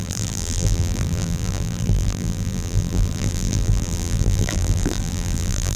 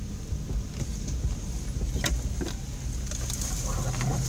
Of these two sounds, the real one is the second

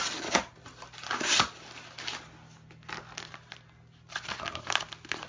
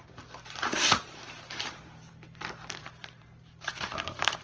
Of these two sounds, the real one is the first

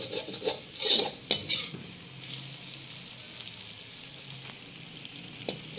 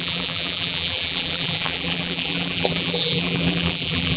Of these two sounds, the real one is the first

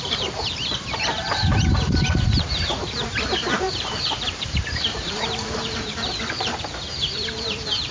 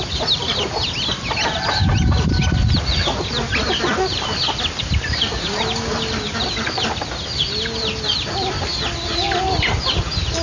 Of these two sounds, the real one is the second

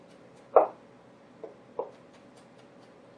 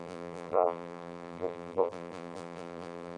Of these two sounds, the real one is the first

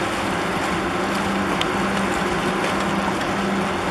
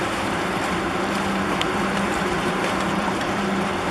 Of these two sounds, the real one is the first